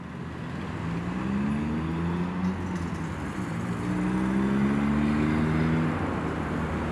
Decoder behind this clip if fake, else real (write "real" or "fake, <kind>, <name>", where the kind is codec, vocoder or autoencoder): real